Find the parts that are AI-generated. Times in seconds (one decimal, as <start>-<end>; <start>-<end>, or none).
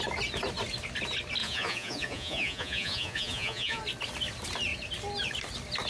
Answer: 1.4-3.8